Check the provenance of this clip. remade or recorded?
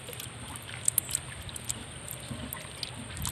recorded